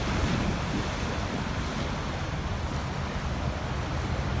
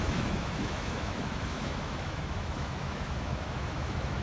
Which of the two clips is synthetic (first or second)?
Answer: second